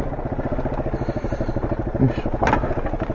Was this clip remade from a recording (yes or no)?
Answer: no